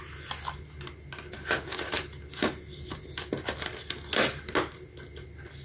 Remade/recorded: recorded